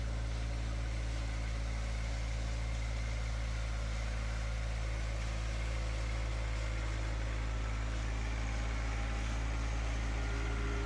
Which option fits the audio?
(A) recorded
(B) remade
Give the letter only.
A